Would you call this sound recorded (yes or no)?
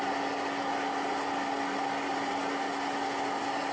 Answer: yes